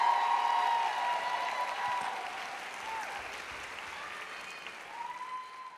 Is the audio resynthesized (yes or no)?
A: no